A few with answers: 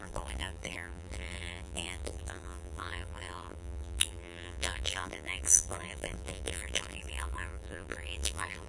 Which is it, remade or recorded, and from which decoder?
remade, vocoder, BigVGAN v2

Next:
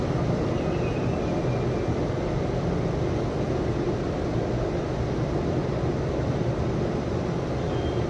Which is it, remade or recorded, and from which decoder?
recorded